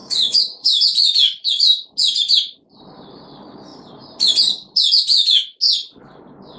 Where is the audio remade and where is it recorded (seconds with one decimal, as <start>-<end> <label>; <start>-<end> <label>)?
0.0-0.8 remade; 0.8-6.6 recorded